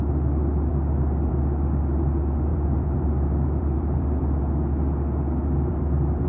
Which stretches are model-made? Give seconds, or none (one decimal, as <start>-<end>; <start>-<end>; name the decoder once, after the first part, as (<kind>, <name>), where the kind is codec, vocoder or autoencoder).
2.5-4.4 (vocoder, BigVGAN v2); 5.4-6.3